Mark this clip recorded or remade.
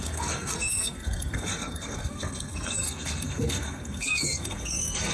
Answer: remade